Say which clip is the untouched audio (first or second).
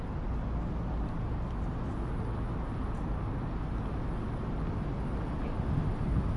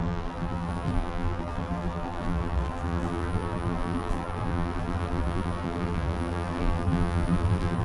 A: first